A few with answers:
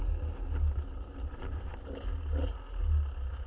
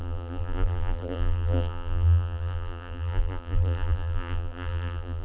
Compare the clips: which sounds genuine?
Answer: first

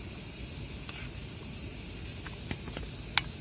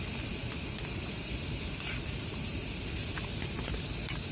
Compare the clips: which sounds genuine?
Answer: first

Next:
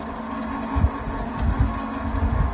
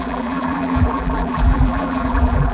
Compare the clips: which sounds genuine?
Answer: first